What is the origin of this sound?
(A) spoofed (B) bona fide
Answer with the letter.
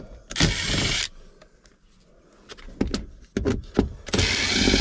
B